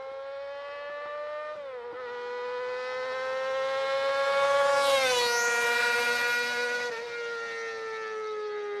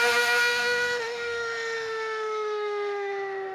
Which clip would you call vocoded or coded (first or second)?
second